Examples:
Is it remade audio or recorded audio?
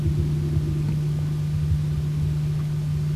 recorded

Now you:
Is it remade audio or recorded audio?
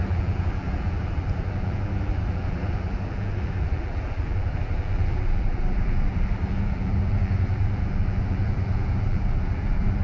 remade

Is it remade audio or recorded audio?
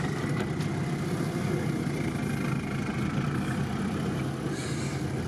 recorded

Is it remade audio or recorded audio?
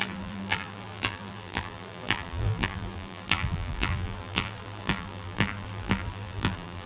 remade